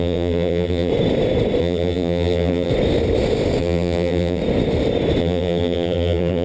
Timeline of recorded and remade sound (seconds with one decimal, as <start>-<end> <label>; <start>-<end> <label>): 0.0-0.9 remade; 0.9-1.6 recorded; 1.6-2.7 remade; 2.7-3.6 recorded; 3.6-4.4 remade; 4.4-5.2 recorded; 5.2-6.4 remade